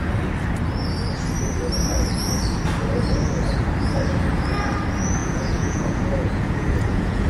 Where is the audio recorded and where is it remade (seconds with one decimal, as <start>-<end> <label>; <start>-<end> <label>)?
0.0-5.2 recorded; 5.2-7.3 remade